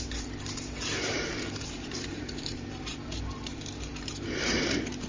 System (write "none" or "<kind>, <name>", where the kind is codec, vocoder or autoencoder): vocoder, BigVGAN v2